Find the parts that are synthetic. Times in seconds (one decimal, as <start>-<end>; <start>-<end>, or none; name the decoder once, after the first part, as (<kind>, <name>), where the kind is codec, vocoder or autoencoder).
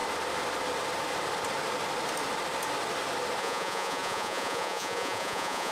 3.4-5.7 (vocoder, Vocos)